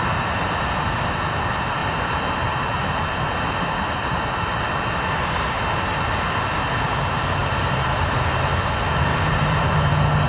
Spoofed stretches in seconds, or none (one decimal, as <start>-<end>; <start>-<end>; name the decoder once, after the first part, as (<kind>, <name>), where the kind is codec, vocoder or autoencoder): 1.8-2.5 (vocoder, BigVGAN v2); 7.4-8.3; 9.1-9.9